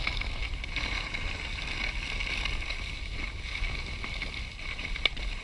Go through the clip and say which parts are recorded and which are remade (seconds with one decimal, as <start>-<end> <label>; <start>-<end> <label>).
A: 0.0-5.4 recorded